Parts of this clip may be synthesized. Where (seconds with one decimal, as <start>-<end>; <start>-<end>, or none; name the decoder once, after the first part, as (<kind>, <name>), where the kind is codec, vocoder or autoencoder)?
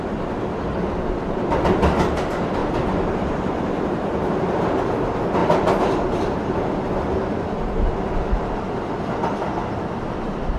2.6-4.4 (vocoder, BigVGAN v2); 5.4-6.9; 9.6-10.6